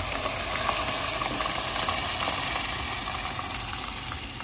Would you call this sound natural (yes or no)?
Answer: yes